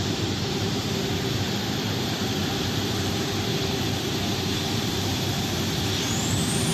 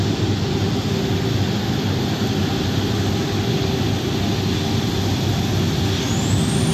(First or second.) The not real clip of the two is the first